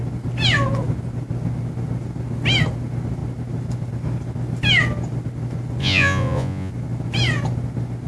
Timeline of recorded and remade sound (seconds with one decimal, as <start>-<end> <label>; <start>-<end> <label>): 0.0-5.8 recorded; 5.8-6.7 remade; 6.7-8.1 recorded